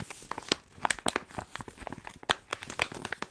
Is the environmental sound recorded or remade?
recorded